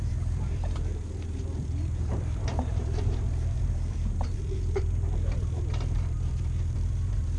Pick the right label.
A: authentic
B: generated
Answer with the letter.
B